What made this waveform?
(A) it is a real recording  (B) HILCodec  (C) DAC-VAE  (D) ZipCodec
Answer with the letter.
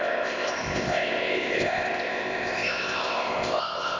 D